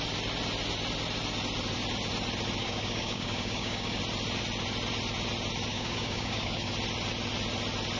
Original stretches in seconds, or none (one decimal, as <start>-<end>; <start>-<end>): 0.0-2.6; 4.0-5.7; 6.7-8.0